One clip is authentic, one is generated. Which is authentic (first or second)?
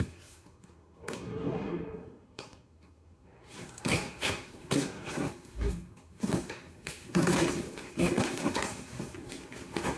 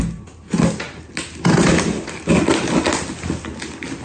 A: second